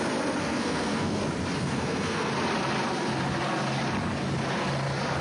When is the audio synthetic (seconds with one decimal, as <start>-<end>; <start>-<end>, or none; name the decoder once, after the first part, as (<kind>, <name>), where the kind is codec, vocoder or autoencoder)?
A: 0.4-1.2 (codec, SNAC); 1.6-2.3